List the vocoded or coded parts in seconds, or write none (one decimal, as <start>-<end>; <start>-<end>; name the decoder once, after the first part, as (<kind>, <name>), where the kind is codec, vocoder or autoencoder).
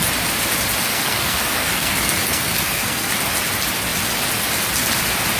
0.9-3.1 (codec, SNAC)